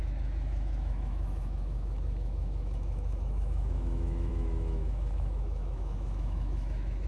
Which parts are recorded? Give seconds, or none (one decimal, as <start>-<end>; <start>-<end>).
none